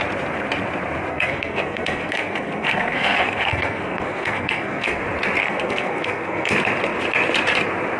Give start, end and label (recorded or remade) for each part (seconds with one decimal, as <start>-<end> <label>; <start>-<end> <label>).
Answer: 0.0-1.1 recorded; 1.1-5.0 remade; 5.0-5.4 recorded; 5.4-6.5 remade; 6.5-8.0 recorded